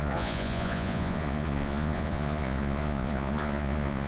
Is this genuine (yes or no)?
no